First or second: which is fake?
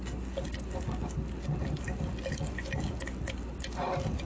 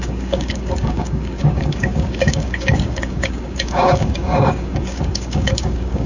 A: second